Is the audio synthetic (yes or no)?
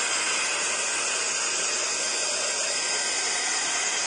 no